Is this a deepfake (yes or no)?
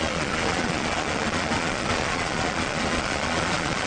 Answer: yes